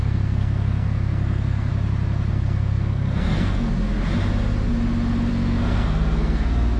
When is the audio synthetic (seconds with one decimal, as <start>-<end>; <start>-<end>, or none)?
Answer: 0.0-1.7; 2.3-3.7; 5.3-6.8